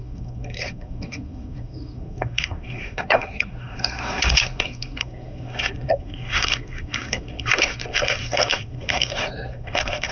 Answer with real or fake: fake